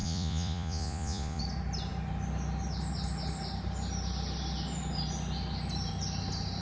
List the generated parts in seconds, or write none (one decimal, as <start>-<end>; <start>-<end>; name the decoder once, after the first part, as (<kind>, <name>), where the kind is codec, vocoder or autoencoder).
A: 0.0-1.4 (vocoder, Vocos)